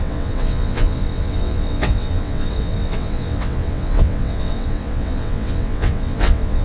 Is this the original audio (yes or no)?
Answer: no